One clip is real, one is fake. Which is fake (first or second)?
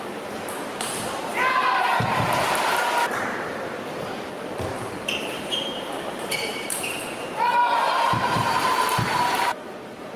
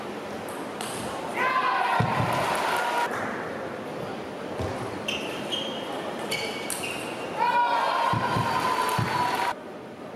first